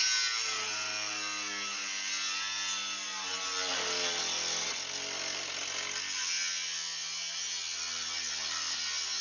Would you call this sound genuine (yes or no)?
yes